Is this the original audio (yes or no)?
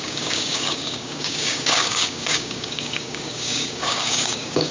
no